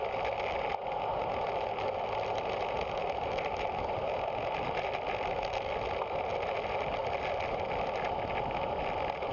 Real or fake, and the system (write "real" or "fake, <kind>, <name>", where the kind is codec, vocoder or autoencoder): real